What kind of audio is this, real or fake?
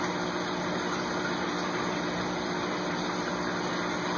real